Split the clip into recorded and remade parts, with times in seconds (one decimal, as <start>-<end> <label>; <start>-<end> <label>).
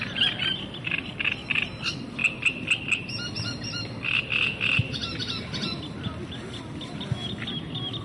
0.0-8.0 recorded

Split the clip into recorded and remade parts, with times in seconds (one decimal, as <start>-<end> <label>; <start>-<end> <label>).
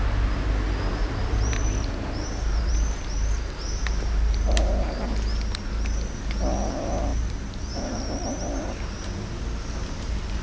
0.0-1.0 recorded; 1.0-5.0 remade; 5.0-7.1 recorded; 7.1-7.8 remade; 7.8-10.4 recorded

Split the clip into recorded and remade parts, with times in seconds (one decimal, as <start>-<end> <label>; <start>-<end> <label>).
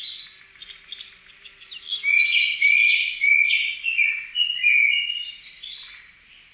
0.0-2.1 recorded; 2.1-6.0 remade; 6.0-6.5 recorded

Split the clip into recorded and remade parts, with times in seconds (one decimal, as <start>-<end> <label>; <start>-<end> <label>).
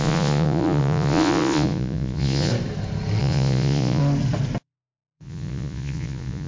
0.0-2.5 remade; 2.5-3.2 recorded; 3.2-4.0 remade; 4.0-4.6 recorded; 4.6-6.5 remade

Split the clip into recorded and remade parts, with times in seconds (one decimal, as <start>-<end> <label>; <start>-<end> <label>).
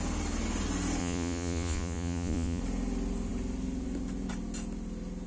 0.0-1.0 recorded; 1.0-2.6 remade; 2.6-5.3 recorded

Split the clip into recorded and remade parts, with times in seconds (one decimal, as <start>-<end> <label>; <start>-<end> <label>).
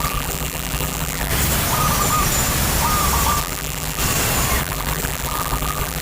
0.0-1.3 remade; 1.3-3.4 recorded; 3.4-4.0 remade; 4.0-4.6 recorded; 4.6-6.0 remade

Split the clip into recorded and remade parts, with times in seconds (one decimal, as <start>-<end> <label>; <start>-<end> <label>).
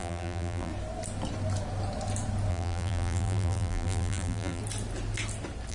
0.0-0.7 remade; 0.7-2.5 recorded; 2.5-4.6 remade; 4.6-5.7 recorded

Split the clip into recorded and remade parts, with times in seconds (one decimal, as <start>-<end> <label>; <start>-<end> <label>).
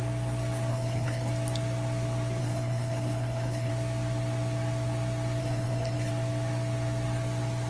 0.0-0.7 recorded; 0.7-1.3 remade; 1.3-2.4 recorded; 2.4-3.7 remade; 3.7-5.4 recorded; 5.4-6.1 remade; 6.1-7.7 recorded